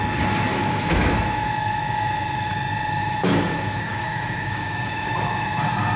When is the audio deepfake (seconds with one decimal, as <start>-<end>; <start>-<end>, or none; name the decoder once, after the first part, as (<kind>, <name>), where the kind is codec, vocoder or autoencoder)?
0.5-2.5 (autoencoder, DAC-VAE); 3.0-5.6